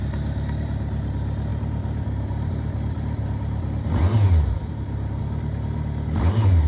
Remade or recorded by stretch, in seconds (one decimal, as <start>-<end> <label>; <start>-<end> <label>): 0.0-6.7 recorded